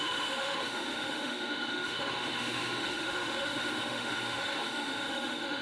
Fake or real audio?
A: fake